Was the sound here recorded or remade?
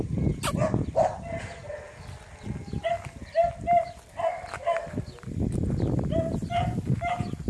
recorded